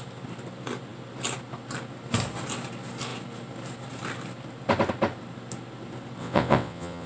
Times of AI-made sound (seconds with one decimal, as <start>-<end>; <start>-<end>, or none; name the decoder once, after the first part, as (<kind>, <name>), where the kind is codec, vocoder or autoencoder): 6.2-7.1 (vocoder, WaveNeXt)